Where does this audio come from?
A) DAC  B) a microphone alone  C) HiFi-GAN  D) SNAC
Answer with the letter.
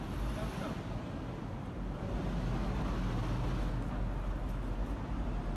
B